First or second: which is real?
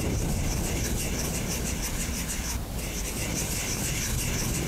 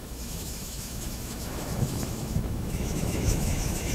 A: first